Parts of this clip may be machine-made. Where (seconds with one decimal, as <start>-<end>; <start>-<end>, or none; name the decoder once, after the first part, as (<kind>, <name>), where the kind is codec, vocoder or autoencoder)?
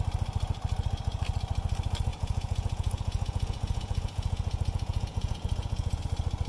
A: 2.1-6.0 (vocoder, Vocos)